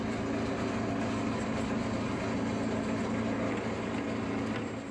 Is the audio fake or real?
real